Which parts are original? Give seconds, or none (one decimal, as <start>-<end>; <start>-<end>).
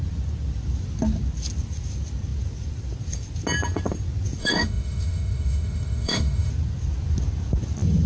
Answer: 0.0-4.4; 6.5-8.1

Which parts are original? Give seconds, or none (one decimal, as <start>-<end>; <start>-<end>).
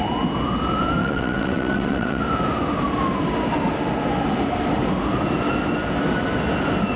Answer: 0.0-1.0; 2.2-7.0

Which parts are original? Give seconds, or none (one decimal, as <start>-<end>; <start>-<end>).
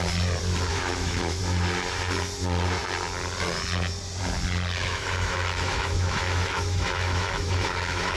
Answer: 0.0-0.7; 1.4-4.8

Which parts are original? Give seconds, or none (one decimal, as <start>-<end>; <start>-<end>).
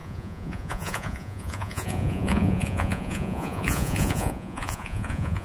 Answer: none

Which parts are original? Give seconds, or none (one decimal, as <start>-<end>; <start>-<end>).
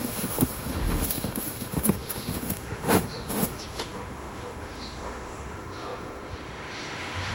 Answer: none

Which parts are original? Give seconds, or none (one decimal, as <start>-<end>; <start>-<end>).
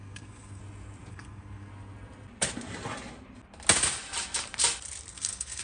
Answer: 0.6-1.1; 1.7-5.1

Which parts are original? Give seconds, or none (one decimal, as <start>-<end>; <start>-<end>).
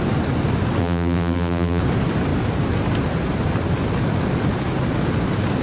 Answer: 0.0-0.8; 1.8-5.6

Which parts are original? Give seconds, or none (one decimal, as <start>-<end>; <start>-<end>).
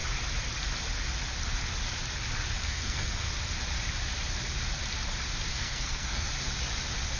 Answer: 0.0-2.6; 3.3-5.5; 6.3-7.2